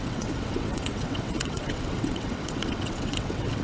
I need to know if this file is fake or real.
fake